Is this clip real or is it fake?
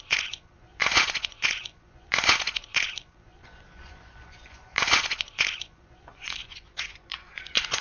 fake